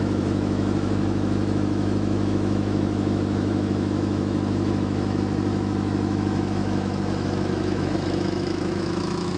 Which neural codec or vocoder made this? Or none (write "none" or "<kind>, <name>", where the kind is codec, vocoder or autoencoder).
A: autoencoder, DAC-VAE